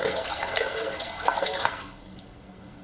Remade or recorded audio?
remade